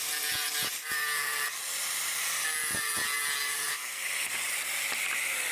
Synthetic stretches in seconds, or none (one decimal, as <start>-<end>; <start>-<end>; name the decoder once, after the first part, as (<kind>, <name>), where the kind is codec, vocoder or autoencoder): 3.7-4.3 (codec, SNAC)